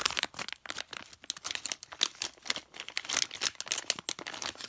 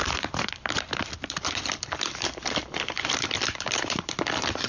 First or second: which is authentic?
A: first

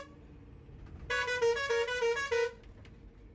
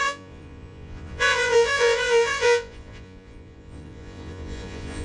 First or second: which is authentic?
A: first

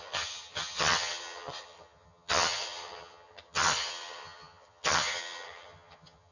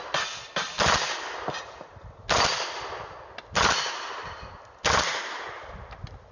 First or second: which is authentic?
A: second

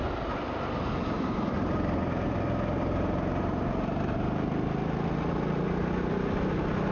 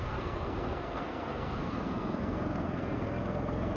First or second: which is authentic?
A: first